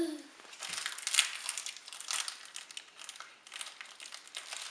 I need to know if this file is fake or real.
real